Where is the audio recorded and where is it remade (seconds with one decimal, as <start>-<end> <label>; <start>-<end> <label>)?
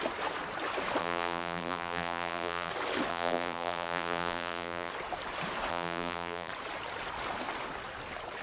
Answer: 0.0-1.0 recorded; 1.0-2.7 remade; 2.7-3.1 recorded; 3.1-4.9 remade; 4.9-5.7 recorded; 5.7-6.5 remade; 6.5-8.4 recorded